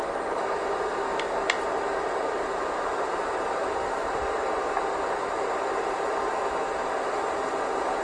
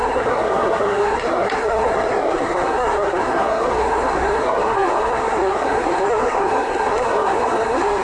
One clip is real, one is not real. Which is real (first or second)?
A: first